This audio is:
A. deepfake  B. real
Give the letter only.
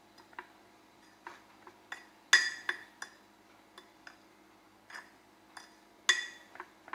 B